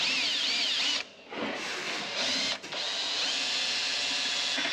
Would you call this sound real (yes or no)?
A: yes